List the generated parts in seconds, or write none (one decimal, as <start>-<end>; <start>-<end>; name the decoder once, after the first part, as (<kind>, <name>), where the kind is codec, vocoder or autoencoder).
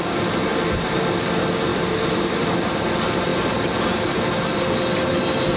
0.5-1.0 (vocoder, BigVGAN v2); 1.7-2.8